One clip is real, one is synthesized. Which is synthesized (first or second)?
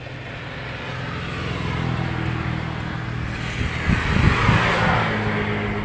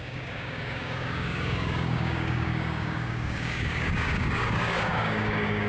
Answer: second